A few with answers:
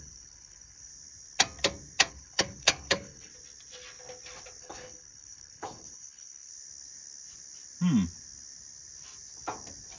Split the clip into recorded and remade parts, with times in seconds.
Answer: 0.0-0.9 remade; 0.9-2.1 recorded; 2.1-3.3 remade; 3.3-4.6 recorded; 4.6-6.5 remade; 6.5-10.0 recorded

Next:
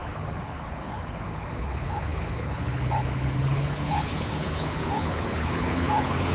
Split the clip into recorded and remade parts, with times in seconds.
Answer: 0.0-6.3 remade

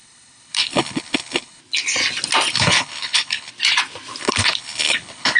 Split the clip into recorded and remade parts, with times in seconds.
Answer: 0.0-1.6 remade; 1.6-2.5 recorded; 2.5-3.5 remade; 3.5-4.2 recorded; 4.2-5.4 remade

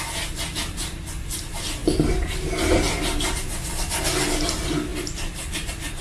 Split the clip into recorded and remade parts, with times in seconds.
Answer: 0.0-6.0 recorded

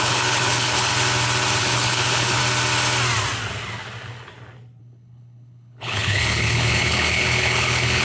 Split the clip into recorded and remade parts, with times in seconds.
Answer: 0.0-0.9 remade; 0.9-1.6 recorded; 1.6-2.4 remade; 2.4-4.8 recorded; 4.8-8.0 remade

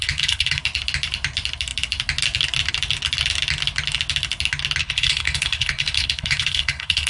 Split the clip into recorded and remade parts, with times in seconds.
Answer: 0.0-0.6 remade; 0.6-4.8 recorded; 4.8-7.1 remade

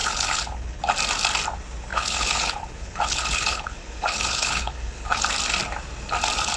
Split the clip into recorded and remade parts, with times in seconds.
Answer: 0.0-0.8 remade; 0.8-1.9 recorded; 1.9-5.2 remade; 5.2-6.6 recorded

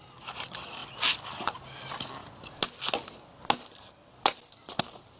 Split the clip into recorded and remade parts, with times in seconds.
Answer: 0.0-5.2 recorded